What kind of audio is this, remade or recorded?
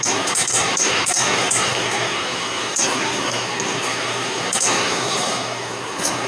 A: remade